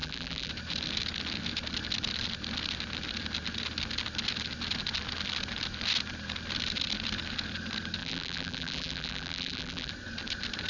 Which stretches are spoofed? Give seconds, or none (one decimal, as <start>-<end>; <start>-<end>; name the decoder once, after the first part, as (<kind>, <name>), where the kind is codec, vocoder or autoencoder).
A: 0.0-0.5 (vocoder, BigVGAN v2); 8.0-9.9